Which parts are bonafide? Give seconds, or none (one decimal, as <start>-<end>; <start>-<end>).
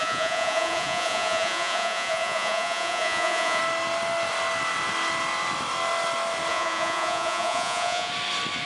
3.6-6.5; 8.1-8.7